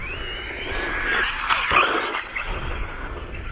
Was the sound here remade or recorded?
recorded